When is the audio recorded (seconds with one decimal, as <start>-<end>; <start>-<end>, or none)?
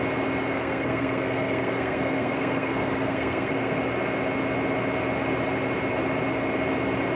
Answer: 0.0-0.5; 3.8-7.2